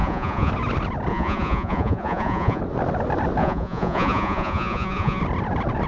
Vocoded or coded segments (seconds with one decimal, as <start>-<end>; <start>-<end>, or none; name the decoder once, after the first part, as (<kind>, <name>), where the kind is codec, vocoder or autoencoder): 0.0-0.5 (vocoder, Vocos); 1.1-2.6; 3.4-5.2